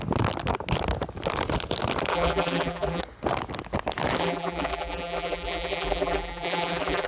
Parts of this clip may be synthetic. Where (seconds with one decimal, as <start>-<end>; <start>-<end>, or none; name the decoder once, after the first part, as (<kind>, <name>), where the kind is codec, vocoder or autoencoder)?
2.1-3.0 (vocoder, BigVGAN v2); 4.2-7.1